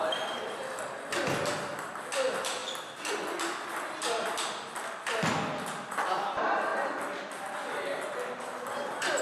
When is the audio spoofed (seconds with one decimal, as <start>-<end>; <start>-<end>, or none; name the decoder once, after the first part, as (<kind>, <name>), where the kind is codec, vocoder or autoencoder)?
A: none